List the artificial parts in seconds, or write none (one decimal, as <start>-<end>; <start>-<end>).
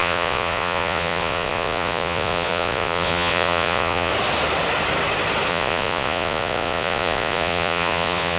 0.0-4.1; 5.5-8.4